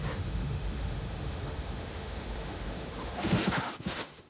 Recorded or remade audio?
remade